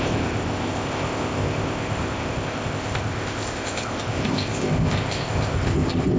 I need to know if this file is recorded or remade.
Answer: remade